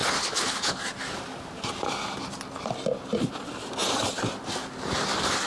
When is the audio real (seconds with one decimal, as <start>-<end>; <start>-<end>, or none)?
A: 0.8-5.5